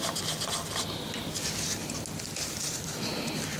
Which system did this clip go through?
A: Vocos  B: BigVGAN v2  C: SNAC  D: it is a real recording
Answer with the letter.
D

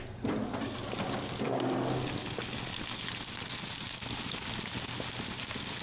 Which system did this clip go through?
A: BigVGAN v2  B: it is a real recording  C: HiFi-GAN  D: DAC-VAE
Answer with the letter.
B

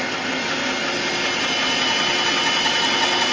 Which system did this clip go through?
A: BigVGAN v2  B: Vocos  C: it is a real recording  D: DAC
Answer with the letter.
C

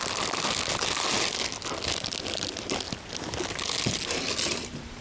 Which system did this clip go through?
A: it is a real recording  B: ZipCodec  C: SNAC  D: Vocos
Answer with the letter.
A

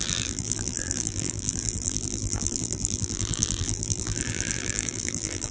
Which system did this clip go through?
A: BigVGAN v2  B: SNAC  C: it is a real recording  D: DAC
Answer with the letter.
A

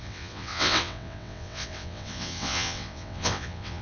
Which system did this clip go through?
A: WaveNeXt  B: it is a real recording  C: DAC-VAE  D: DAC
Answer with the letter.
A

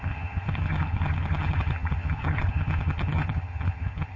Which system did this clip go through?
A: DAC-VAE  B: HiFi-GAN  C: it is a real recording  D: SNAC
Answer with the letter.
B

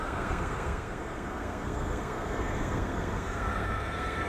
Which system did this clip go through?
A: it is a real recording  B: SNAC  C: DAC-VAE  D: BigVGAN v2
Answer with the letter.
B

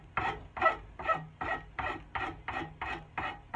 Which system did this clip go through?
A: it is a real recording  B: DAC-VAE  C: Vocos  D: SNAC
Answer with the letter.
A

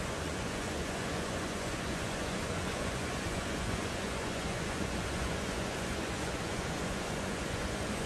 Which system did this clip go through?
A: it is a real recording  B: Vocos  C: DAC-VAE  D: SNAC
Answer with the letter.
B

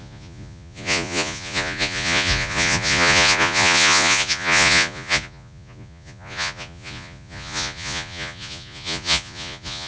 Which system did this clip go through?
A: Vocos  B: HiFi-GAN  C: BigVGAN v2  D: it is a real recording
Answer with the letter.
A